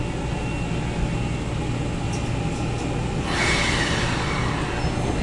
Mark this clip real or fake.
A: real